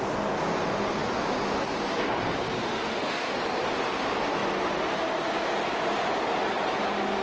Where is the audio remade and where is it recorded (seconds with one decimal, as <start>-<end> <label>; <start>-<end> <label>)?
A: 0.0-2.6 recorded; 2.6-3.3 remade; 3.3-7.2 recorded